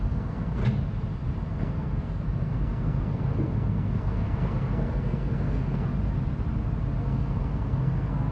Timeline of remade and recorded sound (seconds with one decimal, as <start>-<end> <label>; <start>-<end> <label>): 0.0-0.6 remade; 0.6-1.5 recorded; 1.5-5.9 remade; 5.9-7.0 recorded; 7.0-8.3 remade